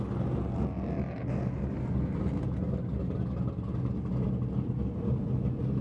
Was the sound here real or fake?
real